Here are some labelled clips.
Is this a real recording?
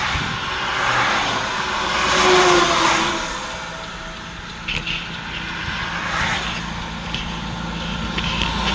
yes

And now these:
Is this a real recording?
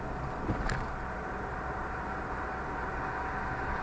yes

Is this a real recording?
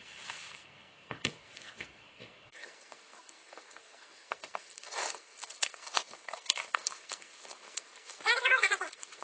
no